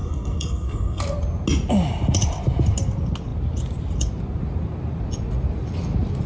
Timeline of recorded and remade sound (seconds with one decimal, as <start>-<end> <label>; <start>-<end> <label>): 0.0-1.0 remade; 1.0-6.3 recorded